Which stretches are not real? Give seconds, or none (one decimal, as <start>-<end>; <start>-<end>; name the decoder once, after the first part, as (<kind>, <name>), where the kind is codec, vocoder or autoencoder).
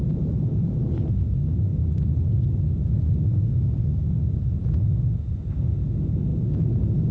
none